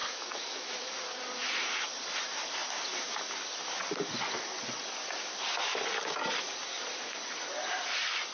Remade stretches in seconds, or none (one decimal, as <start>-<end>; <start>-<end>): 0.0-0.9